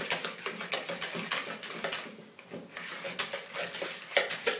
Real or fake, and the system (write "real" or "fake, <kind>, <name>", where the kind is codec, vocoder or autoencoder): real